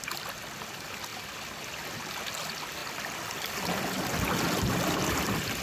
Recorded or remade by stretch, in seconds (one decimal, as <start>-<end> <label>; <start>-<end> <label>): 0.0-5.6 recorded